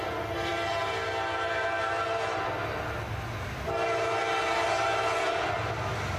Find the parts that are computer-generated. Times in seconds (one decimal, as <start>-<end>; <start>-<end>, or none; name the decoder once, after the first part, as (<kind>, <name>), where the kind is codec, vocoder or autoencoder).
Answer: none